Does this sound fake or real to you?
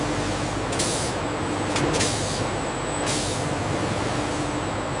real